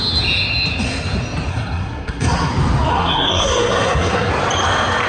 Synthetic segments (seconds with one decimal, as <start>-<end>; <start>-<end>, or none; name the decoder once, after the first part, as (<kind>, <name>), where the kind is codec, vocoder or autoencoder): 1.5-2.5 (codec, SNAC); 2.9-4.3